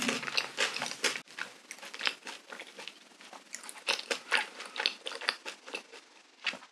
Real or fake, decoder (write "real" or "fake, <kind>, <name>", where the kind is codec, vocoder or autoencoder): real